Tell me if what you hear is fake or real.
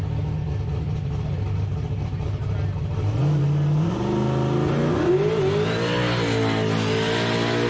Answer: real